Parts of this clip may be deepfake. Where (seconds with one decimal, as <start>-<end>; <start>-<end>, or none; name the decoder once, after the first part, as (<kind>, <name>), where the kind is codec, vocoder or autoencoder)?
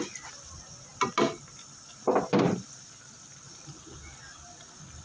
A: none